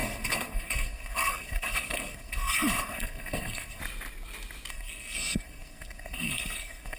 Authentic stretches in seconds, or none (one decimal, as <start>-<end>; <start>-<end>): 3.8-4.7